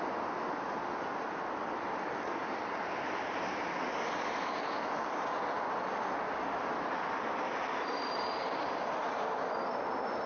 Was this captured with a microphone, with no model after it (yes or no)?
yes